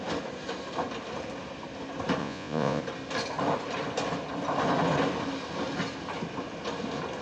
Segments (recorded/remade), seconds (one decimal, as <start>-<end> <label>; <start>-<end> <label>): 0.0-2.2 recorded; 2.2-2.8 remade; 2.8-7.2 recorded